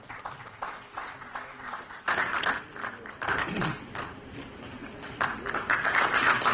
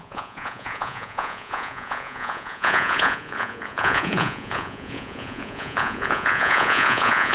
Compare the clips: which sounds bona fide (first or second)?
first